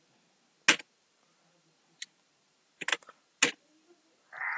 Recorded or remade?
recorded